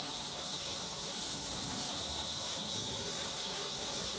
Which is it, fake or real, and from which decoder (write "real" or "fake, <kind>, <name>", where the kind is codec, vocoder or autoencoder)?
fake, codec, SNAC